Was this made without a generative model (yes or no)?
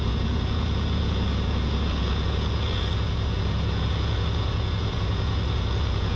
no